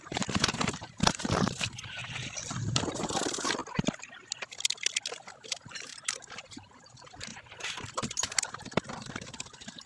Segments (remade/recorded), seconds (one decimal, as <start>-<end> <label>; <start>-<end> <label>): 0.0-2.0 remade; 2.0-2.7 recorded; 2.7-3.6 remade; 3.6-5.3 recorded; 5.3-7.3 remade; 7.3-8.4 recorded; 8.4-9.9 remade